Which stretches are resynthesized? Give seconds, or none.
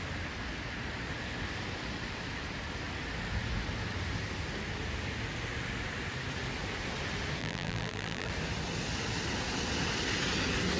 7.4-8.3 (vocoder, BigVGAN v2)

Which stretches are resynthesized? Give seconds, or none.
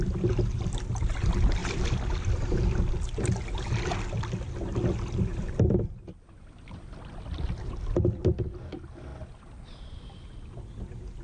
1.6-2.6 (vocoder, BigVGAN v2); 5.3-7.7; 9.1-9.8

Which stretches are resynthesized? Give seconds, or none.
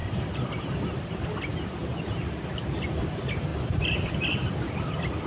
0.0-0.5 (vocoder, BigVGAN v2)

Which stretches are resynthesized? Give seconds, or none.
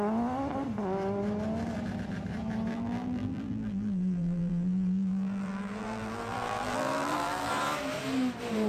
2.7-7.5 (vocoder, BigVGAN v2)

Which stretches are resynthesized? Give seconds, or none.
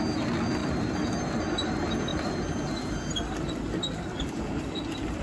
0.6-1.3 (vocoder, BigVGAN v2)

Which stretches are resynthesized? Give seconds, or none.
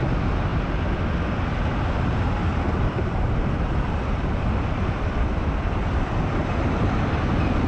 2.4-4.3 (vocoder, BigVGAN v2); 4.8-6.4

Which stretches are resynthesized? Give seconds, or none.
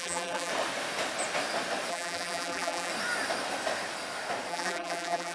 0.0-0.5 (vocoder, BigVGAN v2); 1.9-2.9; 4.5-5.3